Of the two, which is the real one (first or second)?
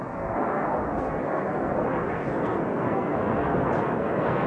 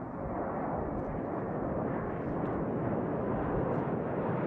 second